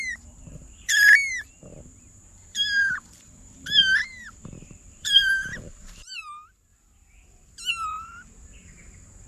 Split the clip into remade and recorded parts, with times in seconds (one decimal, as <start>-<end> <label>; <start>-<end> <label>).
0.0-6.7 remade; 6.7-7.7 recorded; 7.7-9.3 remade